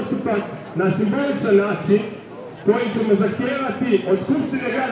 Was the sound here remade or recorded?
recorded